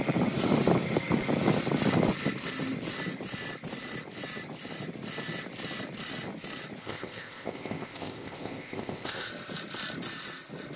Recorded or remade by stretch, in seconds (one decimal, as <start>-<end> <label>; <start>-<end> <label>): 0.0-6.8 recorded; 6.8-9.3 remade; 9.3-10.8 recorded